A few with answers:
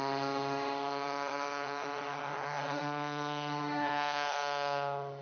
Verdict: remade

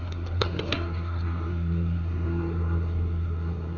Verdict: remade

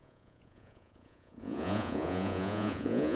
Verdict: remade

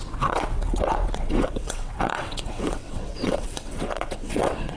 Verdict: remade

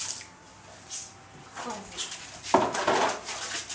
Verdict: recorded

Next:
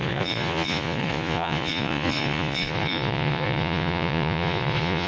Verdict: remade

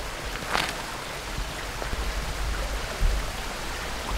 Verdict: recorded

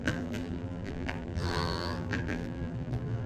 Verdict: remade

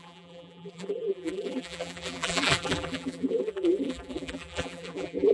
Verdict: remade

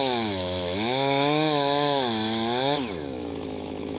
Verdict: remade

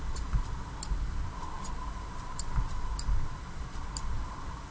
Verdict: recorded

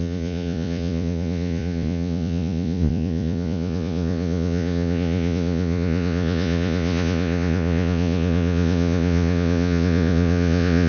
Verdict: remade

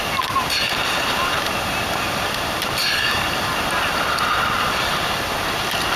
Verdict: recorded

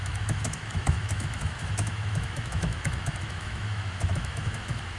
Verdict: remade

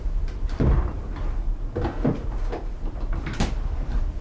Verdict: recorded